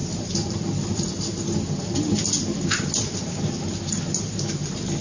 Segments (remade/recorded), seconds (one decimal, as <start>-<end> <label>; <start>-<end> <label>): 0.0-5.0 recorded